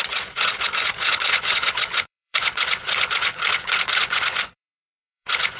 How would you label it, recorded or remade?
remade